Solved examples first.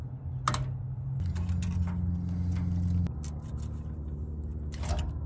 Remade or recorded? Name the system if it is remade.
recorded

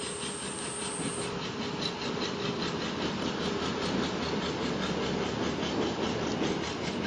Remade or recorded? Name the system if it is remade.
recorded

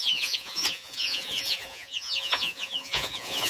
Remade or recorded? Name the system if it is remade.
remade, vocoder, Vocos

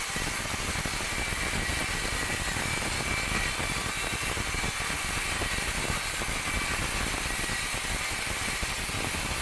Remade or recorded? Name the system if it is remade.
recorded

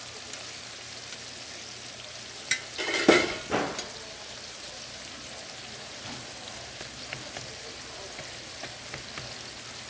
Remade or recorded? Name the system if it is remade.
recorded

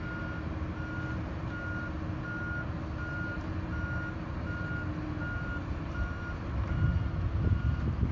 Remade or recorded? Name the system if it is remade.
recorded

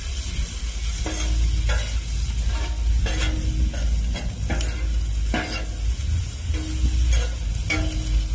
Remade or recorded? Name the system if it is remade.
recorded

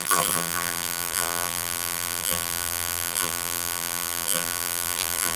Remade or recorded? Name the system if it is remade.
remade, vocoder, BigVGAN v2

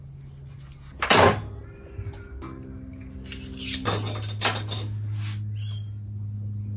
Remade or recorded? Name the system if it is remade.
recorded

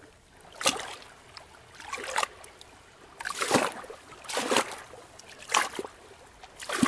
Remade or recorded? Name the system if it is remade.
recorded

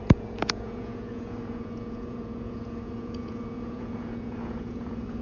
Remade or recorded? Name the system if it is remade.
remade, vocoder, Vocos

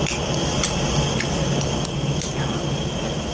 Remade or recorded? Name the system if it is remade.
recorded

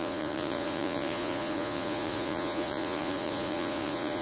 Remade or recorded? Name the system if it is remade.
remade, vocoder, Vocos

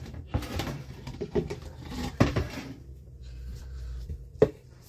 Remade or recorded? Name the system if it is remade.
remade, vocoder, BigVGAN v2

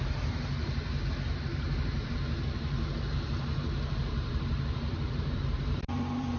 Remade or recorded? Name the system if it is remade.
remade, vocoder, BigVGAN v2